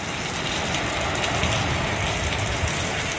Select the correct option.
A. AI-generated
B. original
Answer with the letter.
B